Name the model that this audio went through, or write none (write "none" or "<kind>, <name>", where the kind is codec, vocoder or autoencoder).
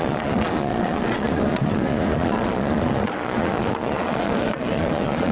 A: vocoder, Vocos